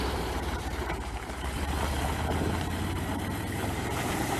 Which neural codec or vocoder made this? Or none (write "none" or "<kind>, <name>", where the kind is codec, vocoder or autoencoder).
vocoder, BigVGAN v2